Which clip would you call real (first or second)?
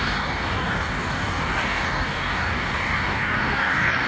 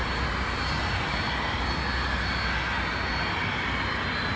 second